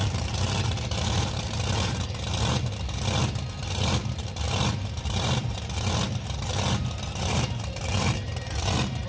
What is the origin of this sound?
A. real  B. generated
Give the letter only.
B